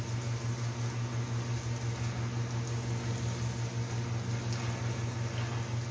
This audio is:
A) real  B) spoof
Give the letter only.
A